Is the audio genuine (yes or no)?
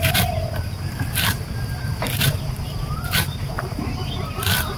no